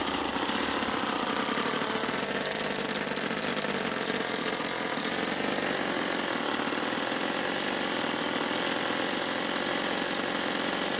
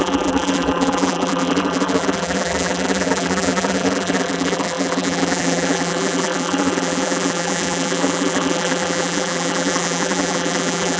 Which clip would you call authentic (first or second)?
first